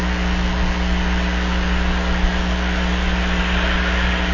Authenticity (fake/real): real